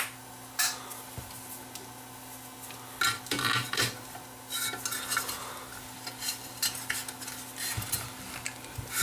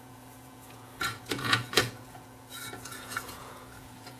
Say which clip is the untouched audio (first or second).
first